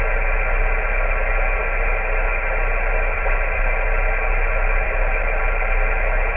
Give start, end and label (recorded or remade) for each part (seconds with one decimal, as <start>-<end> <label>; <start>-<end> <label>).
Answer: 0.0-1.6 recorded; 1.6-5.4 remade; 5.4-6.4 recorded